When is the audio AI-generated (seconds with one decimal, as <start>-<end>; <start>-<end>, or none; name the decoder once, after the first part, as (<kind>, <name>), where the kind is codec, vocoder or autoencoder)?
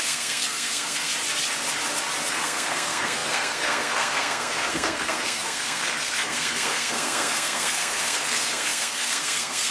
0.0-1.1 (codec, SNAC); 2.3-9.7